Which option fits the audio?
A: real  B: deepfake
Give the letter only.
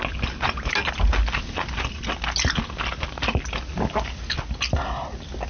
A